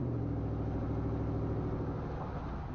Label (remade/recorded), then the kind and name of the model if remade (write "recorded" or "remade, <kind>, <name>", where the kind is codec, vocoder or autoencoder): recorded